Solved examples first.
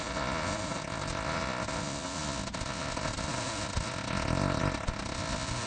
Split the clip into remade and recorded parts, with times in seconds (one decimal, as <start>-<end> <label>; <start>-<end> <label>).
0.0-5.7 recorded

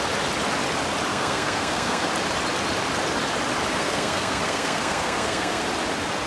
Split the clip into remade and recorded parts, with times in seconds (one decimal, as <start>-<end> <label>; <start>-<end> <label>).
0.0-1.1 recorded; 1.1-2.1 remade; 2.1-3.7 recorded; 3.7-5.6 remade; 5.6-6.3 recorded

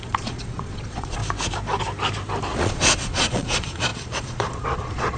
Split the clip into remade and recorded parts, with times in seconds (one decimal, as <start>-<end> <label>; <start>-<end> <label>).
0.0-1.2 remade; 1.2-2.6 recorded; 2.6-5.2 remade

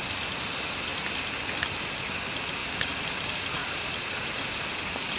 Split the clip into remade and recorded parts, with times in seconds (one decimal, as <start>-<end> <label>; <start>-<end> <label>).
0.0-5.2 recorded